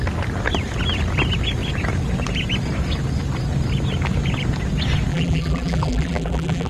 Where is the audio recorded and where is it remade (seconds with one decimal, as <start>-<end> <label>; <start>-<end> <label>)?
0.0-5.1 recorded; 5.1-6.7 remade